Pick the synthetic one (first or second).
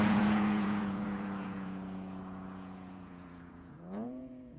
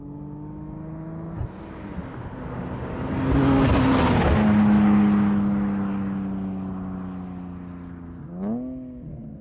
first